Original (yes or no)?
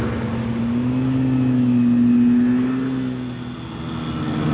yes